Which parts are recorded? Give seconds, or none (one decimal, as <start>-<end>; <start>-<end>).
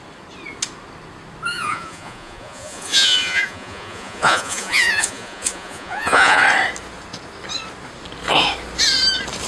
0.0-1.5; 6.4-9.5